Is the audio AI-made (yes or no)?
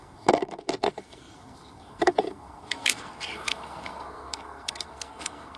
yes